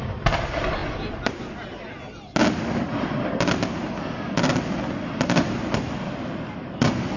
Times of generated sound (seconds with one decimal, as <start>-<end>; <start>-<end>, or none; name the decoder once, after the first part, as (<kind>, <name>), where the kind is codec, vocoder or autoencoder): none